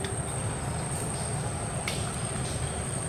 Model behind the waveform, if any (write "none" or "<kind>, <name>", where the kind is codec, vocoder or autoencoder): none